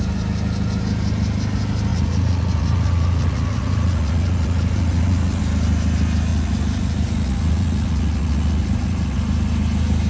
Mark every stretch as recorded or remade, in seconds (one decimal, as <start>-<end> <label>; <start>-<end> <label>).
0.0-1.9 recorded; 1.9-5.4 remade; 5.4-6.3 recorded; 6.3-9.2 remade; 9.2-10.1 recorded